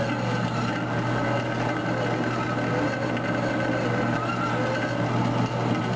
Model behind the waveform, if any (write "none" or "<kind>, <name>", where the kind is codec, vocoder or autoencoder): vocoder, BigVGAN v2